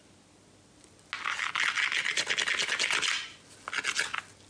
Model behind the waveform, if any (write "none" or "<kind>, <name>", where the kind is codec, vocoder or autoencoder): none